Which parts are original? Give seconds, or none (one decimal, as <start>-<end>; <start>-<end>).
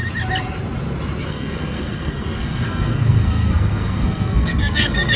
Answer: 0.0-1.3